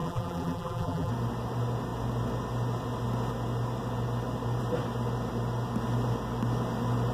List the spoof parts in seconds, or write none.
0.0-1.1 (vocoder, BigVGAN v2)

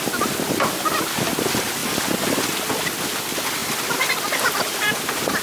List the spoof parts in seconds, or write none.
3.6-4.7 (vocoder, BigVGAN v2)